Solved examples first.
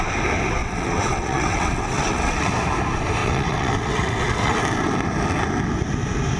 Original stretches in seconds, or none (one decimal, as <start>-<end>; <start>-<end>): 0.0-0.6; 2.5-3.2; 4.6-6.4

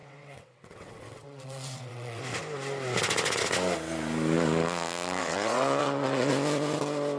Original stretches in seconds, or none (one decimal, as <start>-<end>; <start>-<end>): 2.2-5.2; 6.3-7.2

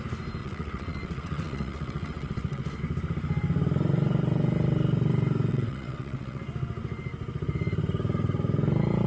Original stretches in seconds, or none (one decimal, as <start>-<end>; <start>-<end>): 0.0-0.4; 2.8-5.5; 6.4-9.1

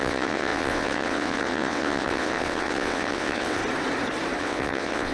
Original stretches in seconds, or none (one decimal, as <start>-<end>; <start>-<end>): 3.6-4.4